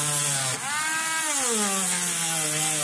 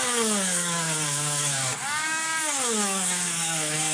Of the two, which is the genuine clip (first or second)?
first